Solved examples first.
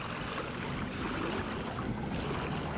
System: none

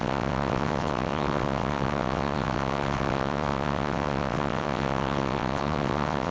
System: vocoder, WaveNeXt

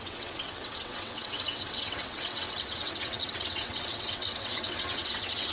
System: vocoder, WaveNeXt